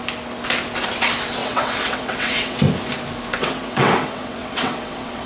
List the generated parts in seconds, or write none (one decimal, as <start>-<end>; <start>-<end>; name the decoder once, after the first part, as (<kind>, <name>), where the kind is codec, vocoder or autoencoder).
1.4-2.6 (vocoder, WaveNeXt); 3.4-5.3